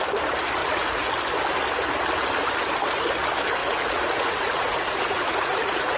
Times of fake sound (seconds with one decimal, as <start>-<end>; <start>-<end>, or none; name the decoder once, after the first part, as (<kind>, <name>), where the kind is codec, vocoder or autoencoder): 0.6-1.1 (vocoder, Vocos); 3.6-6.0